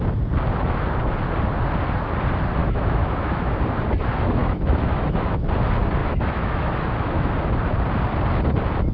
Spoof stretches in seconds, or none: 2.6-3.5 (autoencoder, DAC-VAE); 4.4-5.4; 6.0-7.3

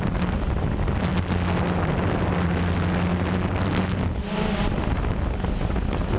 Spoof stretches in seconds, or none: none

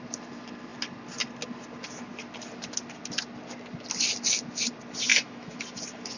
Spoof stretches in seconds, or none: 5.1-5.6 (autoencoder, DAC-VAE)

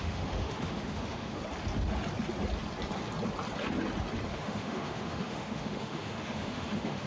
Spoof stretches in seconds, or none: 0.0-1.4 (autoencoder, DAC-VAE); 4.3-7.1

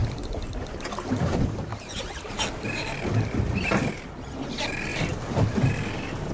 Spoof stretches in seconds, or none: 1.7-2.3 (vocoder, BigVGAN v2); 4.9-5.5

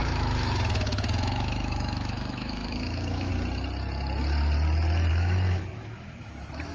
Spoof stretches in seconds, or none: 0.0-3.3 (autoencoder, DAC-VAE); 5.1-6.7